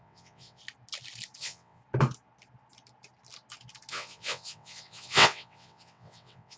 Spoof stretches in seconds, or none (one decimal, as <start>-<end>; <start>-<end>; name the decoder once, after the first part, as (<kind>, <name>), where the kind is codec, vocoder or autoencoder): 0.0-0.6 (vocoder, WaveNeXt); 1.4-1.8; 3.9-6.6